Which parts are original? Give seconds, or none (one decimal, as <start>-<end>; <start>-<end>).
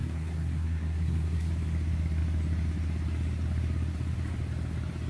1.5-5.1